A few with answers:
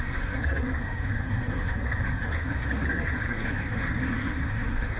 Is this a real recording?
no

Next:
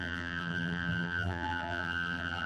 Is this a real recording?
no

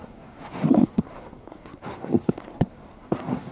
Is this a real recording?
no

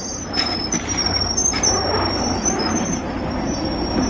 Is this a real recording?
no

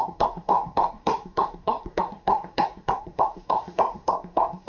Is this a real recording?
no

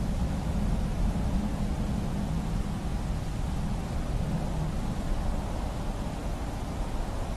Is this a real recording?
yes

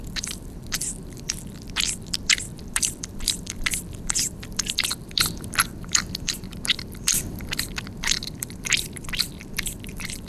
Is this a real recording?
no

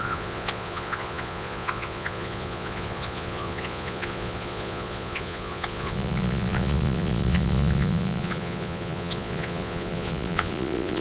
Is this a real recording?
no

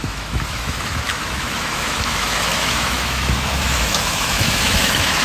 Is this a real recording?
no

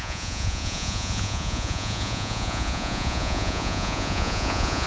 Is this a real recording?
no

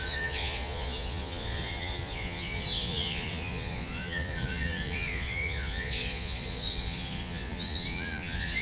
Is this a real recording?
no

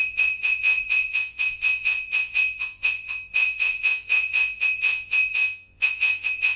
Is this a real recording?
no